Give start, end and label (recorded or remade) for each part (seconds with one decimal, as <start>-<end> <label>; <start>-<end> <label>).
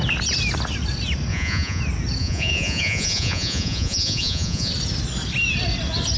0.0-1.3 recorded; 1.3-1.8 remade; 1.8-2.2 recorded; 2.2-4.7 remade; 4.7-6.2 recorded